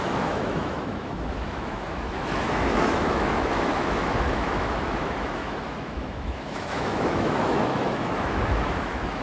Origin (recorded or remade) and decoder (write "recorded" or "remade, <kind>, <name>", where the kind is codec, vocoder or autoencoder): remade, autoencoder, DAC-VAE